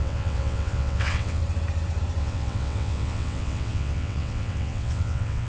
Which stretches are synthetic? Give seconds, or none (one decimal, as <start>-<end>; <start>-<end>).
0.0-1.4; 2.2-5.5